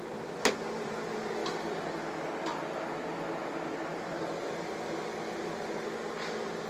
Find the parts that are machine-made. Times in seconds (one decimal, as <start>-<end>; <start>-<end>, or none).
none